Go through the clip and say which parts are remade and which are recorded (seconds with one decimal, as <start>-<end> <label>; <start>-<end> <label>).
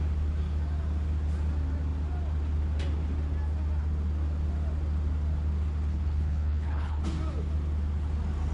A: 0.0-5.9 recorded; 5.9-7.0 remade; 7.0-8.5 recorded